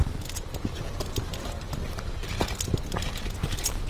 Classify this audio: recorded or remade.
recorded